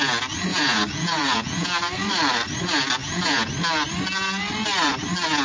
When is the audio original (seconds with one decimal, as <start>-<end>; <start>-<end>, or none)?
0.0-0.5; 2.1-3.0; 3.5-5.4

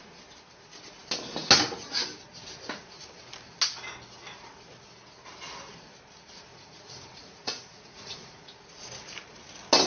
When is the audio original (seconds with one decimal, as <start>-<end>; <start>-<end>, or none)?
0.0-6.5; 8.6-9.9